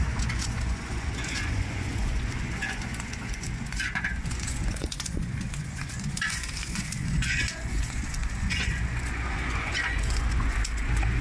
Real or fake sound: fake